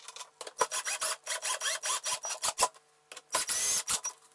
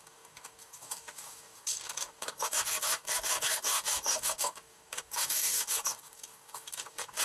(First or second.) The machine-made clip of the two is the second